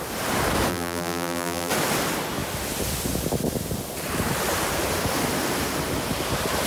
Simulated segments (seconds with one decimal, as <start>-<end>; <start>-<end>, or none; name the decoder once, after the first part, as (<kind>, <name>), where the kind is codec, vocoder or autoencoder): 0.7-1.7 (vocoder, BigVGAN v2)